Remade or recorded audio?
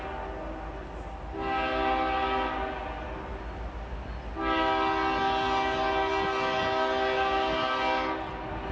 recorded